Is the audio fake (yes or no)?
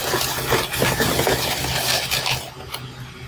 no